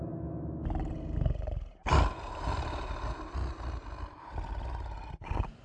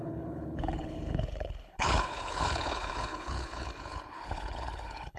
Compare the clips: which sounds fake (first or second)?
second